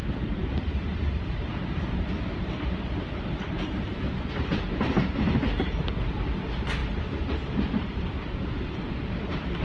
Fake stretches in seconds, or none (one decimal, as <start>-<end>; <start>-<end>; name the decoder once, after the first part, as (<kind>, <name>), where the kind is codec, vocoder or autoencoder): 0.0-3.9 (vocoder, BigVGAN v2); 5.6-9.6